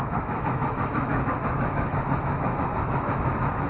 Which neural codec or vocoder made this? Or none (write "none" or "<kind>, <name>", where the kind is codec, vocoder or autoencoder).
autoencoder, DAC-VAE